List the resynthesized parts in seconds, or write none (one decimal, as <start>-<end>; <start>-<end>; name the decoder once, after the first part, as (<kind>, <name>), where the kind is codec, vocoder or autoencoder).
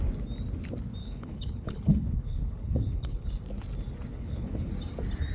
1.0-3.3 (codec, HILCodec); 4.1-4.7